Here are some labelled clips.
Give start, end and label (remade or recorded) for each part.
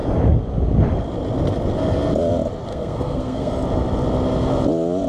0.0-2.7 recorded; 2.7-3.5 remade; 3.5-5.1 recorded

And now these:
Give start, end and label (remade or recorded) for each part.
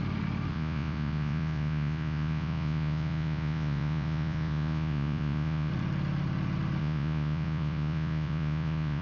0.0-0.5 recorded; 0.5-5.7 remade; 5.7-6.8 recorded; 6.8-9.0 remade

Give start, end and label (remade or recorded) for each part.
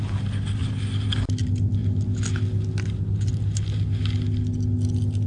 0.0-5.3 recorded